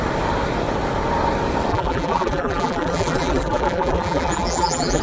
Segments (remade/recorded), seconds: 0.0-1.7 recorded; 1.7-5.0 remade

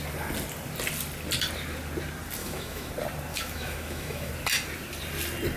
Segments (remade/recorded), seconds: 0.0-2.4 recorded; 2.4-2.9 remade; 2.9-3.3 recorded; 3.3-4.3 remade; 4.3-5.6 recorded

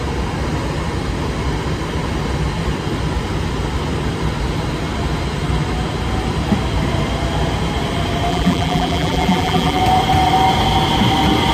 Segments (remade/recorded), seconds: 0.0-8.3 recorded; 8.3-9.8 remade; 9.8-11.5 recorded

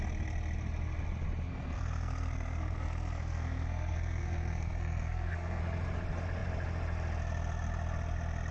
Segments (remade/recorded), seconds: 0.0-1.5 recorded; 1.5-5.6 remade; 5.6-8.5 recorded

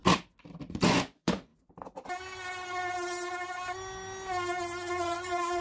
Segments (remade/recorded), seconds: 0.0-0.7 recorded; 0.7-1.5 remade; 1.5-4.9 recorded; 4.9-5.6 remade

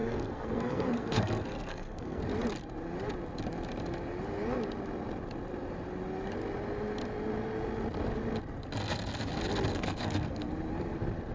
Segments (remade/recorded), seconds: 0.0-2.2 remade; 2.2-9.7 recorded; 9.7-10.5 remade; 10.5-11.3 recorded

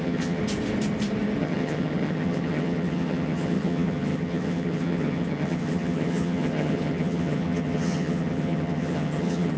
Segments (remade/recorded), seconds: 0.0-0.4 remade; 0.4-1.4 recorded; 1.4-9.6 remade

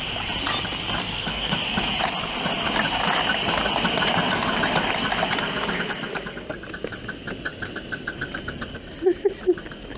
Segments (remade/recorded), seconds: 0.0-1.0 recorded; 1.0-1.5 remade; 1.5-10.0 recorded